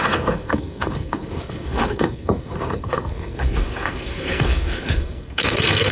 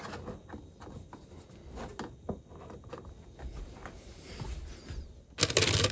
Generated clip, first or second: first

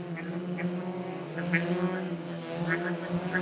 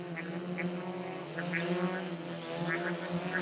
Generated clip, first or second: first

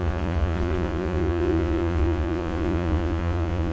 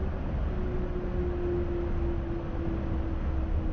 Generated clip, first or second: first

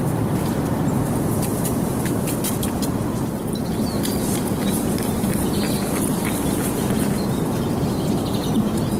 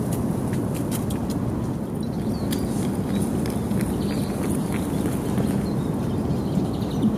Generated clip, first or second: first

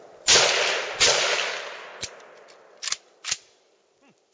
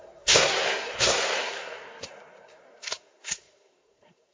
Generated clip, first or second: second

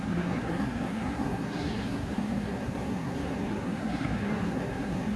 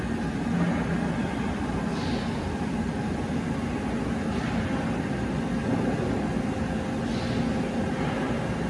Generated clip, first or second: first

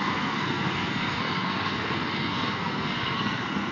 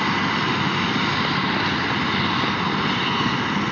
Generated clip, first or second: first